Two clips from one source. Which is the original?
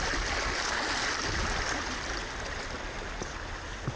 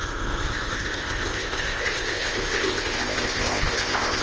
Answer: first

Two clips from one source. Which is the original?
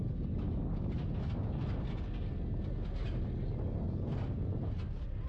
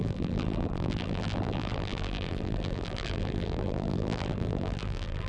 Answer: first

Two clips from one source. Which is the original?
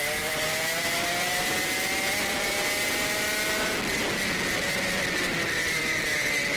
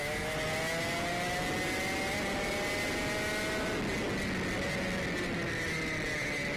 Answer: second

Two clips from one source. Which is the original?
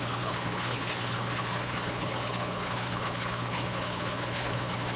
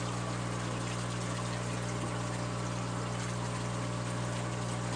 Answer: second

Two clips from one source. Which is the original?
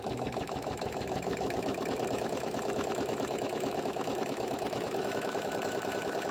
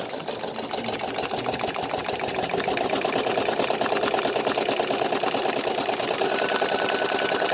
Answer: second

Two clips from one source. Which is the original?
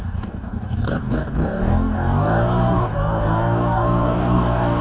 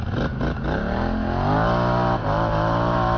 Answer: second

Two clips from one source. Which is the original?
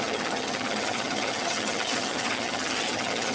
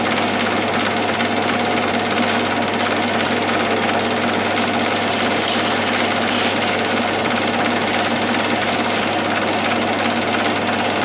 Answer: second